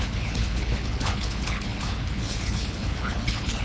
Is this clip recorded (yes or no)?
no